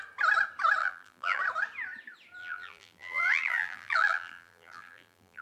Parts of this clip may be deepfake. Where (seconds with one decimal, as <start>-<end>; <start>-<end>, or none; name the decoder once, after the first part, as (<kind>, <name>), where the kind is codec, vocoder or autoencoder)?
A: 0.8-1.4 (vocoder, BigVGAN v2); 2.4-5.4

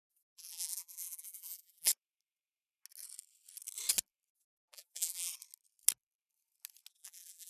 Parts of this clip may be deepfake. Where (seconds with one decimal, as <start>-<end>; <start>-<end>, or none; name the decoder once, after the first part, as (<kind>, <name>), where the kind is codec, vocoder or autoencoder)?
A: 0.0-1.9 (vocoder, BigVGAN v2); 4.3-5.3; 6.9-7.5

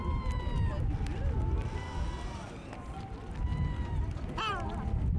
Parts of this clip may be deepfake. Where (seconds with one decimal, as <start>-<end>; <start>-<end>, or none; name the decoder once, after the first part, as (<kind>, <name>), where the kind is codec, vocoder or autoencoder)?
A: 3.5-5.2 (vocoder, BigVGAN v2)

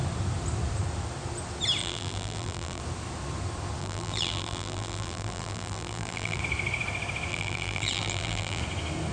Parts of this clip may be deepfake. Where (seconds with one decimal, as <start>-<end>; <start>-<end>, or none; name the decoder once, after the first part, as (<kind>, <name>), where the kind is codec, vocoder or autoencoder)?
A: 1.8-2.8 (vocoder, BigVGAN v2); 3.8-6.4; 7.3-8.6